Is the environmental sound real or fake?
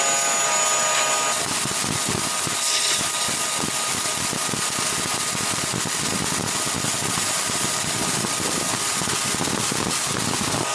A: real